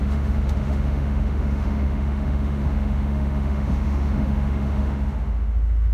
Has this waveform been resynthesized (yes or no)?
yes